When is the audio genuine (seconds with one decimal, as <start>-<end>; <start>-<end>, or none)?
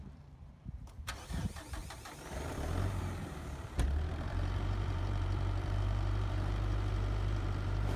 1.8-3.0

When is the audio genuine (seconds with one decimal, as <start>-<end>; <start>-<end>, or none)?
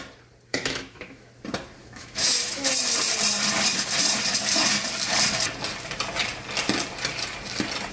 0.0-0.5; 1.3-1.8; 2.7-7.9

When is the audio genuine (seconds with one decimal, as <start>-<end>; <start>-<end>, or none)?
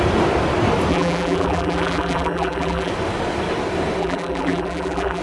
0.0-0.9; 2.9-4.0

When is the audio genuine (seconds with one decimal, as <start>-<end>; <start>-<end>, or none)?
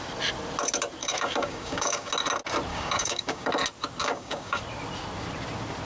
0.0-1.0; 2.1-2.7; 3.5-4.0; 4.6-5.8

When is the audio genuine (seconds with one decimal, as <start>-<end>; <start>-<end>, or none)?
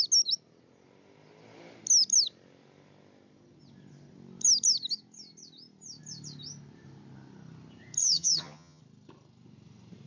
0.0-8.0; 8.8-10.1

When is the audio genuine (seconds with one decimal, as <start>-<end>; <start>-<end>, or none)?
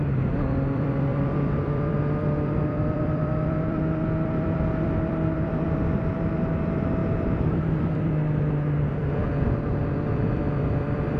none